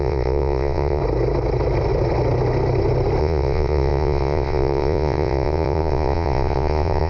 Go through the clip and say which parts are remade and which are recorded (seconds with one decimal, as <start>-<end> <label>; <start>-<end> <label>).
0.0-1.0 remade; 1.0-3.2 recorded; 3.2-7.1 remade